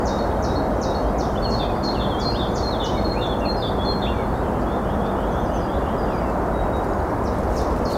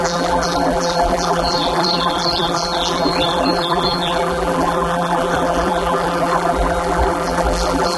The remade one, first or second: second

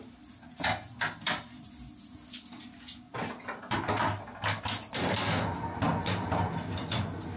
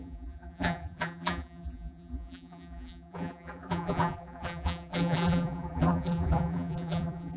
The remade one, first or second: second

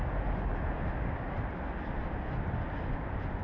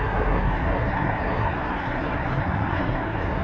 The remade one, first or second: second